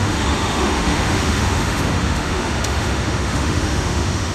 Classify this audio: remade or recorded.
remade